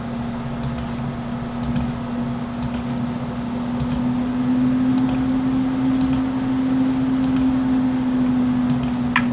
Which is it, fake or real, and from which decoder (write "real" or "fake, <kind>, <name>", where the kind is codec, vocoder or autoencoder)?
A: real